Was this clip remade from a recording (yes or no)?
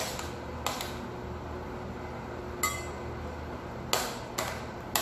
no